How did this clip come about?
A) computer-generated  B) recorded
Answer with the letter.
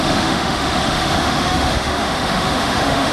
A